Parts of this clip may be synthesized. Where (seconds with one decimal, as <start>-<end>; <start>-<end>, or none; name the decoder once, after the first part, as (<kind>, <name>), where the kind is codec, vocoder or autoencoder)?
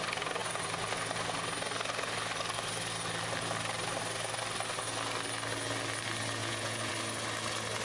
6.4-6.9 (vocoder, Vocos)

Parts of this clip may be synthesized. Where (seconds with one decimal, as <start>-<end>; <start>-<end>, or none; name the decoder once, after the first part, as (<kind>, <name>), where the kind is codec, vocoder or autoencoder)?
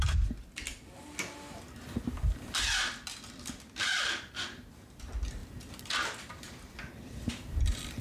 none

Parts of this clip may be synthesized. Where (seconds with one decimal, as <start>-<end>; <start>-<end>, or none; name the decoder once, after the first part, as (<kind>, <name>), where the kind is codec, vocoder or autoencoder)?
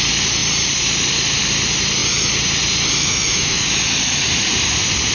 3.0-3.7 (autoencoder, DAC-VAE)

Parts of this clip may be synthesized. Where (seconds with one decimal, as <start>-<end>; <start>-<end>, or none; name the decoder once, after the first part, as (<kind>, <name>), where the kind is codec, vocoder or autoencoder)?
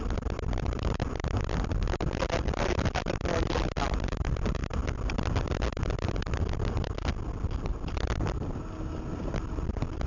none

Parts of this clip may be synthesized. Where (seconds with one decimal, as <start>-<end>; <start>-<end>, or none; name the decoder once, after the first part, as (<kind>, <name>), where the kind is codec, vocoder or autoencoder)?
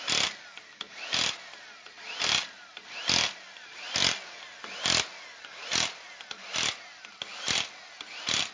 none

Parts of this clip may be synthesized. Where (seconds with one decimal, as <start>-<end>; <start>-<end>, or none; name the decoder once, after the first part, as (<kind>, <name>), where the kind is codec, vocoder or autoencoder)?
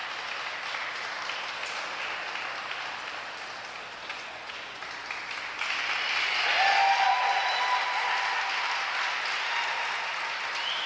4.1-4.8 (vocoder, Vocos)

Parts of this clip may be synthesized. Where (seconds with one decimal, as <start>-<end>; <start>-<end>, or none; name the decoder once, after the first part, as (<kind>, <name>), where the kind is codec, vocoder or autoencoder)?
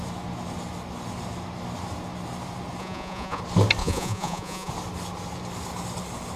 2.8-3.4 (vocoder, Vocos); 3.8-4.7